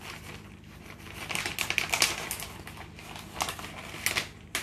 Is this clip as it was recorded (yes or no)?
yes